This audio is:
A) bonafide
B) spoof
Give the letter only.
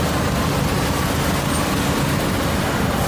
A